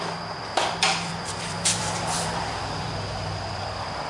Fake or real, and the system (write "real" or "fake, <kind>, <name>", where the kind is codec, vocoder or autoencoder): fake, vocoder, BigVGAN v2